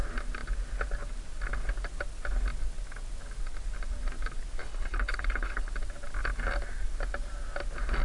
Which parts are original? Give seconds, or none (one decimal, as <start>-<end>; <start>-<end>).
0.0-4.6; 5.7-8.0